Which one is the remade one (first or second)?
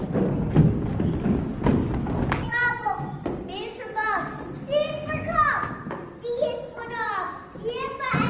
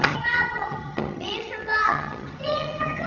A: second